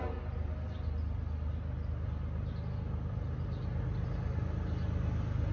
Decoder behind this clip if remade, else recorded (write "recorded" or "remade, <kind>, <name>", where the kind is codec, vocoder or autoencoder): recorded